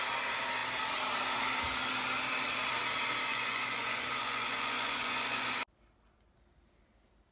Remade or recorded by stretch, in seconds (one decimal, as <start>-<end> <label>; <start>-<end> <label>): 0.0-3.3 recorded; 3.3-5.5 remade; 5.5-7.3 recorded